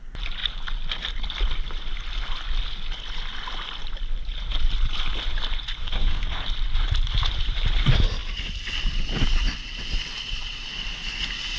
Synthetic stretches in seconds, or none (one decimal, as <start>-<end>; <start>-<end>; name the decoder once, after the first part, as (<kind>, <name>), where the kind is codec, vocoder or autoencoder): 5.8-6.4 (codec, SNAC)